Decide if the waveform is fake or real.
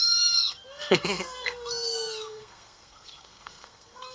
fake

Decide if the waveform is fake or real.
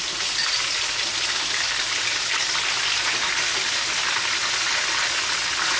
real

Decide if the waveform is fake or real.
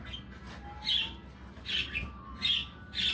real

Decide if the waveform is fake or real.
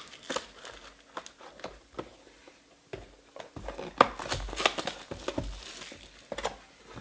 real